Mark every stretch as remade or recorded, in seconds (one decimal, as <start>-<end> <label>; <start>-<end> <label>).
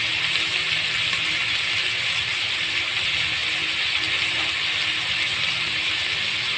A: 0.0-6.6 recorded